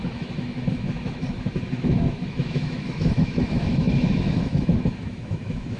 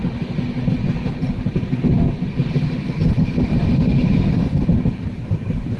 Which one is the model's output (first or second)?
first